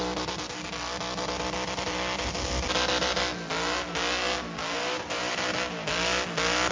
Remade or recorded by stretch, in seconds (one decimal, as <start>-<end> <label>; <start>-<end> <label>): 0.0-6.7 recorded